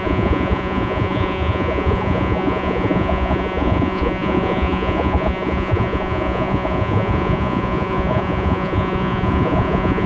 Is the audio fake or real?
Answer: fake